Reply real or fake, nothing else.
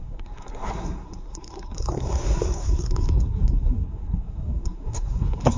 fake